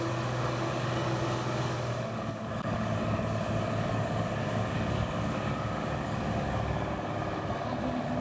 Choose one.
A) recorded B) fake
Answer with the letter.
B